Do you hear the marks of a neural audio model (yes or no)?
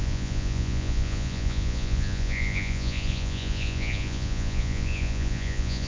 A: yes